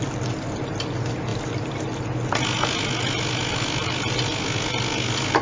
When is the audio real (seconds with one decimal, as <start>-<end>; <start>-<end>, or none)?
0.0-5.4